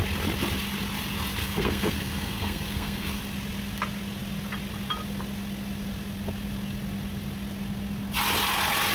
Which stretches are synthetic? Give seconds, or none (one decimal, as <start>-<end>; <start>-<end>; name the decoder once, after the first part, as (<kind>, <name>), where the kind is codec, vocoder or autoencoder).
1.4-3.2 (codec, SNAC)